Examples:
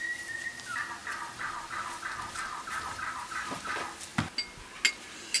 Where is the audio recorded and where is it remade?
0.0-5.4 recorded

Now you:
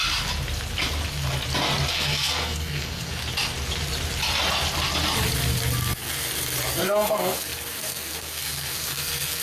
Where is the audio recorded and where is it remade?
0.0-1.9 recorded; 1.9-3.2 remade; 3.2-6.7 recorded; 6.7-9.4 remade